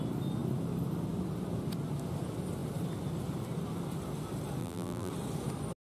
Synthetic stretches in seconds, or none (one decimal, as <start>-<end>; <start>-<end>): 4.6-5.1